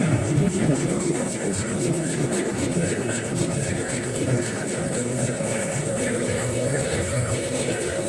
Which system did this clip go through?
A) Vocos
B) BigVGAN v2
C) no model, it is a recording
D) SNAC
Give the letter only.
D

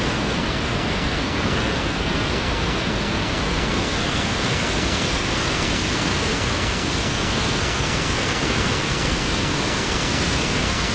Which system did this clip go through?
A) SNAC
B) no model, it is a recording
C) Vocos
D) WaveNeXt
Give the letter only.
A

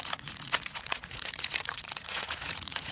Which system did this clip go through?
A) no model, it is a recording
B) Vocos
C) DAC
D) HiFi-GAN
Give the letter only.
B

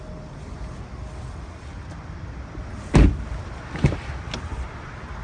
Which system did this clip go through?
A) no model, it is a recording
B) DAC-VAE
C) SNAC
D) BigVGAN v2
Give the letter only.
A